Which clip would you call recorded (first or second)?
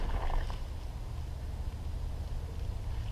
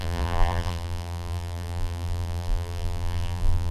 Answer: first